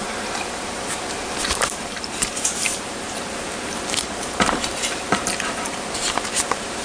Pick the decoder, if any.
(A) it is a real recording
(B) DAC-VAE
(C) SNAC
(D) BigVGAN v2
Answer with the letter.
D